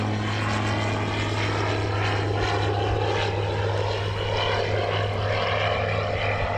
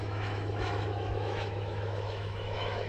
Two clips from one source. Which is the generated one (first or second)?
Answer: second